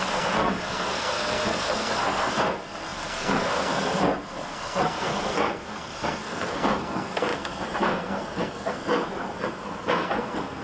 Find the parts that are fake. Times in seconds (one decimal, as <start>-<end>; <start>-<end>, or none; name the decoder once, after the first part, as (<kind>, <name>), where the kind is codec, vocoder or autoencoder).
0.0-10.6 (codec, SNAC)